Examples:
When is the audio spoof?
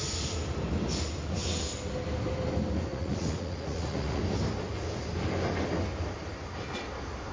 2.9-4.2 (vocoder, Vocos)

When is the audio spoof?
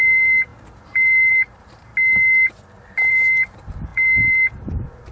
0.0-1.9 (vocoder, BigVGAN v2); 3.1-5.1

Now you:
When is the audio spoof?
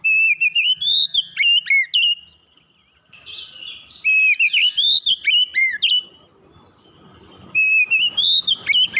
5.5-6.0 (vocoder, BigVGAN v2)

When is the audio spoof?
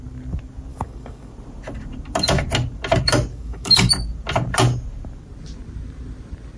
0.7-1.3 (codec, DAC); 3.3-3.9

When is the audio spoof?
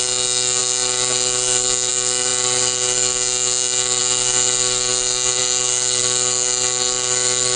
0.0-7.6 (autoencoder, DAC-VAE)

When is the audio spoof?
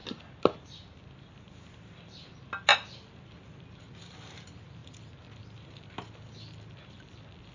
none